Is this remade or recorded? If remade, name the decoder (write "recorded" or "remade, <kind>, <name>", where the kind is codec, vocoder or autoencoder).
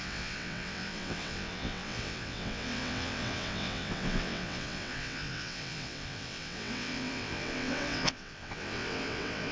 remade, vocoder, WaveNeXt